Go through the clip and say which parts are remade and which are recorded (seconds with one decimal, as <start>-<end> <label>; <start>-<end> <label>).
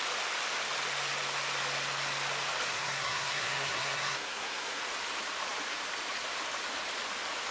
0.0-2.7 recorded; 2.7-4.8 remade; 4.8-7.5 recorded